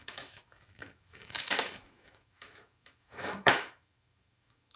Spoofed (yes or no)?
yes